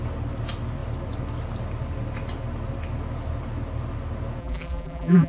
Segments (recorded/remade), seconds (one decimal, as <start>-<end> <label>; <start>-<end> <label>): 0.0-4.4 recorded; 4.4-5.3 remade